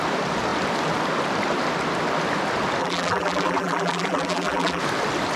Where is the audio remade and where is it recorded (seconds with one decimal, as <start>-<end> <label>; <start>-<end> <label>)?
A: 0.0-2.8 recorded; 2.8-4.8 remade; 4.8-5.4 recorded